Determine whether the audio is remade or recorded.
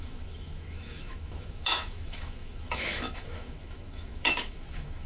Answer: remade